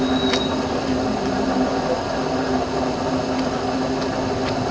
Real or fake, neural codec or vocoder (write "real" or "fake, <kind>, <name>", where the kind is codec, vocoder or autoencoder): real